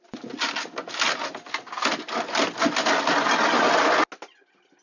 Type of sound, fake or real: real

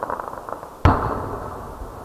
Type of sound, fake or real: real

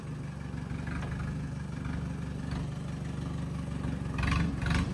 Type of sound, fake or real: real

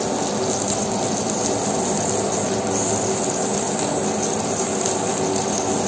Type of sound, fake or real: real